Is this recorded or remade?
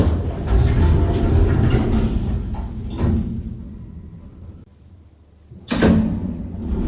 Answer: recorded